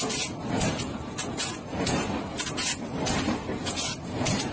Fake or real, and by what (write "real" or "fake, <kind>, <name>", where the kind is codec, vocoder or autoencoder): real